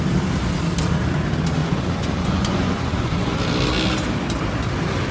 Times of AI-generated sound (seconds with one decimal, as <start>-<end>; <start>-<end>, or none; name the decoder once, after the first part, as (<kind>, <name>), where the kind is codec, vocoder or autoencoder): 1.6-3.4 (vocoder, Vocos)